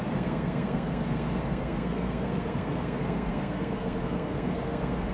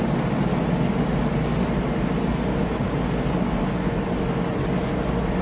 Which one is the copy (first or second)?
first